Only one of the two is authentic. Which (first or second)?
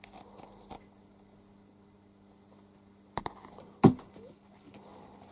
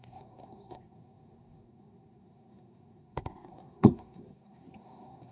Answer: first